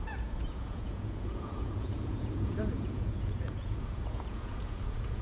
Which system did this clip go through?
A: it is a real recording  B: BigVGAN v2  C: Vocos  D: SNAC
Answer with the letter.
C